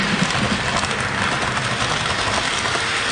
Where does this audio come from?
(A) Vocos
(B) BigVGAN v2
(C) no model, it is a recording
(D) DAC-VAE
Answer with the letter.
C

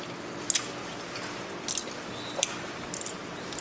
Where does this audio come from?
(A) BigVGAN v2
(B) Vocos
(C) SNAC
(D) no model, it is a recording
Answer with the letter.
D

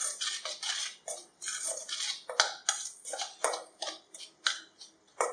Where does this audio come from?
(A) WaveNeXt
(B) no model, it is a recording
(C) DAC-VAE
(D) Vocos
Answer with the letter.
B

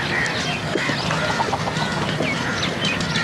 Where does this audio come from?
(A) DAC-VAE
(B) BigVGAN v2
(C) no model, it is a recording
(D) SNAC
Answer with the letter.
C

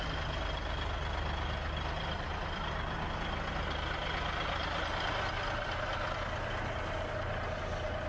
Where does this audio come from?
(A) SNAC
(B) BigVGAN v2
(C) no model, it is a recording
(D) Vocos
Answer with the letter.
C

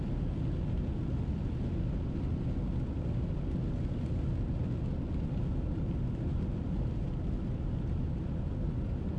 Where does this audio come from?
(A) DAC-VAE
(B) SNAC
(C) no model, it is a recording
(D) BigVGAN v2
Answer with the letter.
C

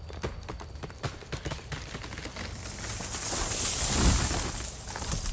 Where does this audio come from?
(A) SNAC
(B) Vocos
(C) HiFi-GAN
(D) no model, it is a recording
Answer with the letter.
D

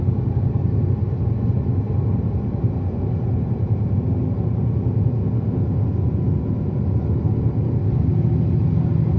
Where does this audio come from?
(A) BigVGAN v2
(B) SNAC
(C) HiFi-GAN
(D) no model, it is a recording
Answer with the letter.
D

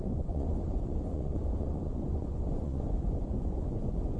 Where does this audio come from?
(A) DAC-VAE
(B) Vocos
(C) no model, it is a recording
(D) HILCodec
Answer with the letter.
B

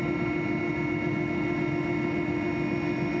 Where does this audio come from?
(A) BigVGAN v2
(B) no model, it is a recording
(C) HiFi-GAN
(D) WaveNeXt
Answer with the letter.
B